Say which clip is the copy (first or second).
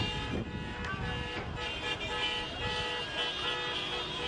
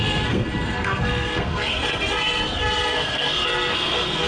second